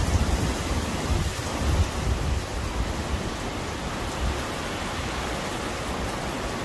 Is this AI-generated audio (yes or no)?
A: no